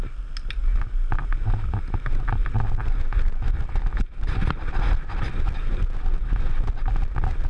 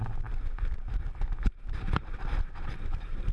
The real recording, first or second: first